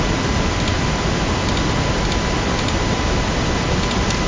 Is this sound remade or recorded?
recorded